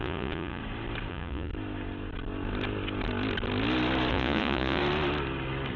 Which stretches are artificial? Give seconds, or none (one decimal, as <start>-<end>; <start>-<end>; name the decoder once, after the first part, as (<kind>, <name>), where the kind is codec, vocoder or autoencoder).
0.0-0.6 (vocoder, Vocos); 1.1-1.5; 4.1-4.8